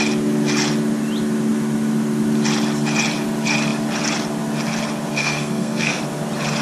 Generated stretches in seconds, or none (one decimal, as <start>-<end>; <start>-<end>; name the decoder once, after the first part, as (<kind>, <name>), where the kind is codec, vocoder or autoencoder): 5.2-6.0 (codec, SNAC)